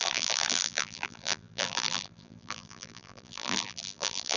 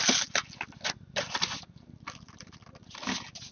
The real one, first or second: second